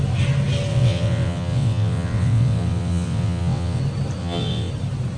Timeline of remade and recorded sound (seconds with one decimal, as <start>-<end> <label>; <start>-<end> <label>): 0.0-0.7 recorded; 0.7-3.8 remade; 3.8-4.2 recorded; 4.2-4.7 remade; 4.7-5.2 recorded